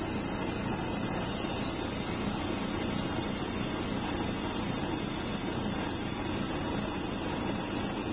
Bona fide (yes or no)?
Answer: yes